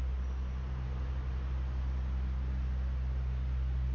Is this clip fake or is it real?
real